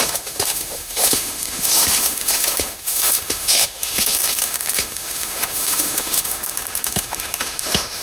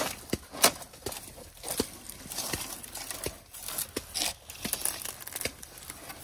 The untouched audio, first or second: second